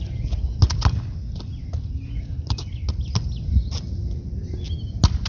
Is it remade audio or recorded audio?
recorded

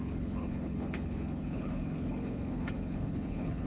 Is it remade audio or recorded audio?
remade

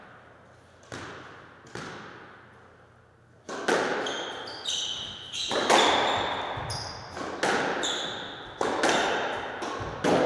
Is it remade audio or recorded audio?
recorded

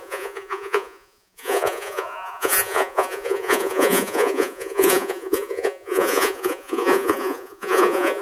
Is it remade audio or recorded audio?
remade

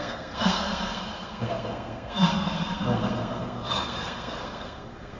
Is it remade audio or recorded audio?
remade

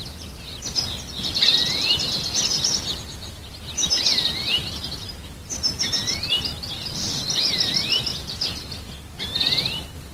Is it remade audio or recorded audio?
recorded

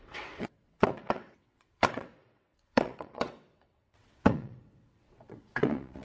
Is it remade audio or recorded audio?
remade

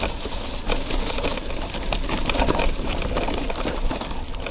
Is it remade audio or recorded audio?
recorded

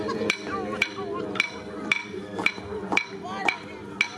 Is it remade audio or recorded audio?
recorded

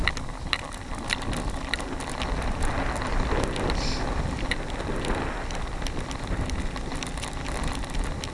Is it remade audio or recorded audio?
recorded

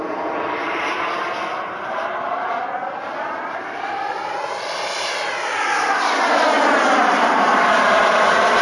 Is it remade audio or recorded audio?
recorded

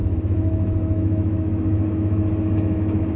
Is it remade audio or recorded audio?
remade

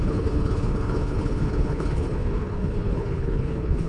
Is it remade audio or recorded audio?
remade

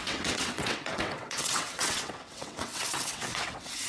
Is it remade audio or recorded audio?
remade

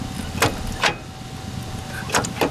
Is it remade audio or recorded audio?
recorded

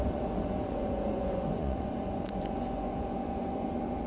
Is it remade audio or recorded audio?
remade